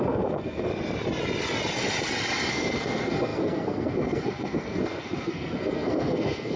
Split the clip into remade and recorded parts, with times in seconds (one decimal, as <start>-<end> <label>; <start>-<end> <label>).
0.0-0.7 remade; 0.7-2.5 recorded; 2.5-6.6 remade